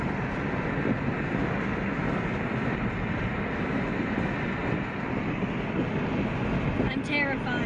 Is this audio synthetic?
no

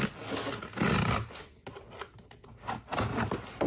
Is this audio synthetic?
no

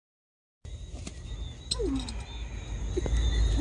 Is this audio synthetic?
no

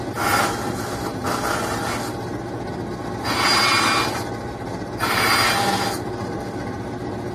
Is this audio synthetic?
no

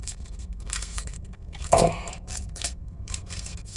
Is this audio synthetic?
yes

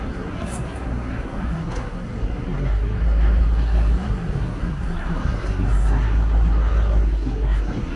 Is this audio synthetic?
yes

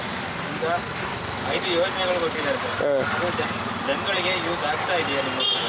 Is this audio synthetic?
no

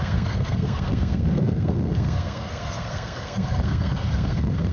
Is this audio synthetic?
yes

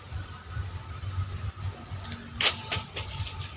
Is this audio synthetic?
no